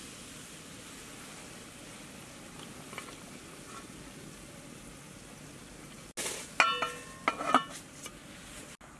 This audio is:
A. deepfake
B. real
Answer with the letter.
B